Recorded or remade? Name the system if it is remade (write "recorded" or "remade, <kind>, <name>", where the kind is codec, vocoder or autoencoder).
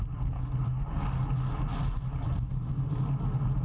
recorded